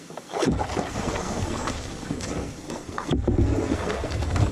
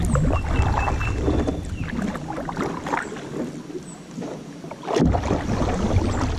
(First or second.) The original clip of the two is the second